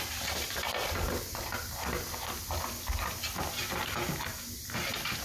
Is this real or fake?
real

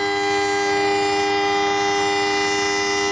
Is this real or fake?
real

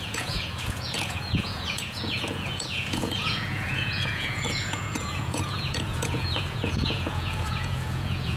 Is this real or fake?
fake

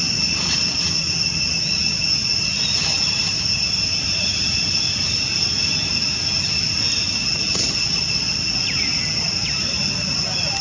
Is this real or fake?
real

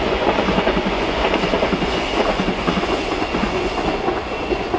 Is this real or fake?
fake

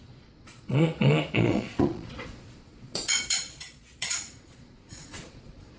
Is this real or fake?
fake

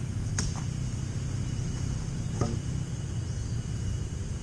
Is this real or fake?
real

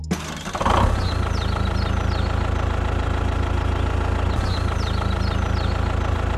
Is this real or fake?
real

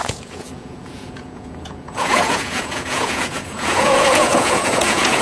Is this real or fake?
fake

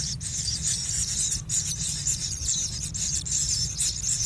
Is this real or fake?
real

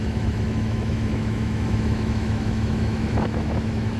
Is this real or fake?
fake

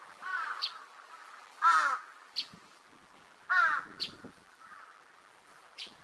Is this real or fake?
fake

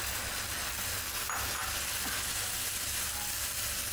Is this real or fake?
real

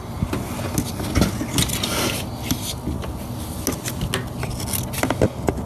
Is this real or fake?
real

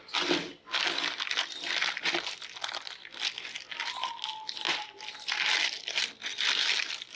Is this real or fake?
real